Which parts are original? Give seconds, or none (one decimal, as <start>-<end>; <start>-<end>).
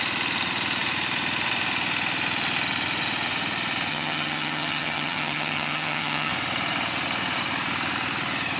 0.0-3.9; 6.3-8.6